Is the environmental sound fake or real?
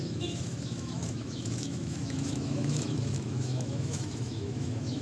fake